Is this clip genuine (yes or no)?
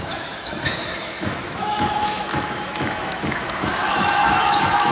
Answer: no